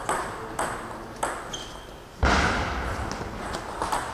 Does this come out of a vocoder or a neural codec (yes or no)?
no